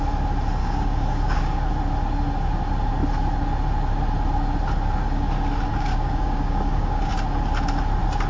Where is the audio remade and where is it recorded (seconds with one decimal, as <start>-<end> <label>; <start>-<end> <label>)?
0.0-0.6 recorded; 0.6-1.7 remade; 1.7-5.7 recorded; 5.7-7.1 remade; 7.1-8.3 recorded